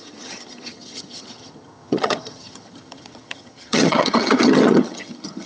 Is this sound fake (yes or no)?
yes